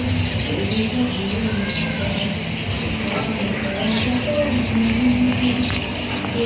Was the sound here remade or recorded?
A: recorded